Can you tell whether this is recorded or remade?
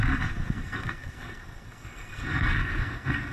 remade